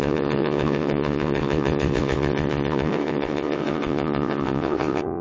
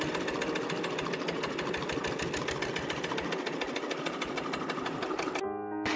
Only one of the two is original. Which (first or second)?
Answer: second